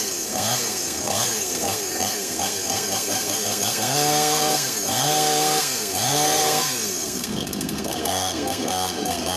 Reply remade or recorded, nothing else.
remade